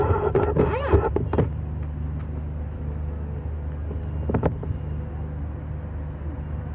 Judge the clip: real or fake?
real